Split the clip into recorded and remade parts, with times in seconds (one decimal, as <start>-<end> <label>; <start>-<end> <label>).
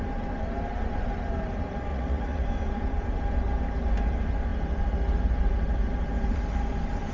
0.0-1.9 recorded; 1.9-2.4 remade; 2.4-7.1 recorded